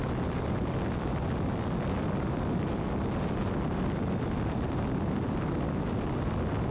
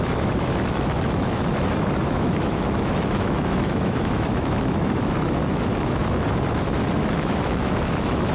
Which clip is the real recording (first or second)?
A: first